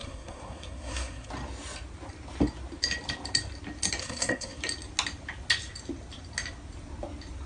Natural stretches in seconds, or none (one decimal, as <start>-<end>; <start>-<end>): 1.3-4.0; 4.6-7.5